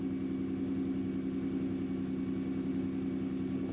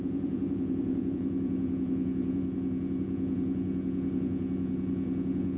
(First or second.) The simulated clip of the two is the second